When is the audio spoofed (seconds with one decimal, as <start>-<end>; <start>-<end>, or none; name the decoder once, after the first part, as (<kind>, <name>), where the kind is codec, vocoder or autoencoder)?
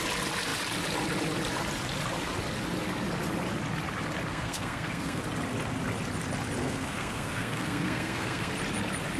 4.3-5.2 (codec, SNAC); 6.6-8.5